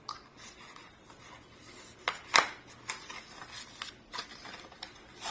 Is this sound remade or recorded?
recorded